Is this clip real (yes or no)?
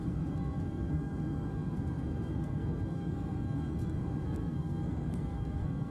no